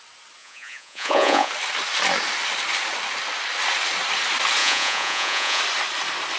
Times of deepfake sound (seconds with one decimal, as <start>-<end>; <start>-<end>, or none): 0.4-1.5; 4.6-5.6